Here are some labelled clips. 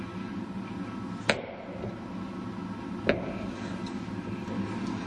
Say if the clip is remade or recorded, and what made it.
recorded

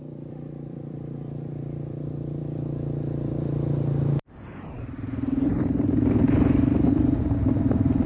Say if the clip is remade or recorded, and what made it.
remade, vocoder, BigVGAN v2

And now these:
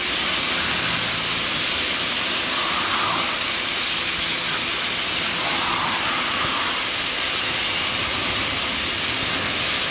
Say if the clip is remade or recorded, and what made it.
remade, vocoder, BigVGAN v2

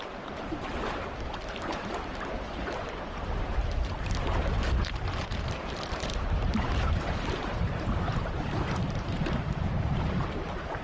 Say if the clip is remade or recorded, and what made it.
remade, vocoder, BigVGAN v2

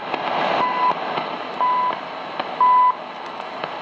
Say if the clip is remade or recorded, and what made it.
recorded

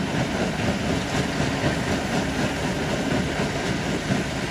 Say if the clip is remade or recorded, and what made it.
recorded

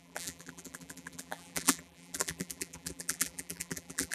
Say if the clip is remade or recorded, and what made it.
remade, vocoder, BigVGAN v2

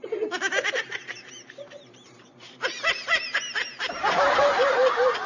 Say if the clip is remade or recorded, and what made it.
remade, vocoder, BigVGAN v2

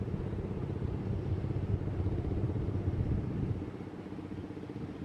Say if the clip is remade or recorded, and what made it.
recorded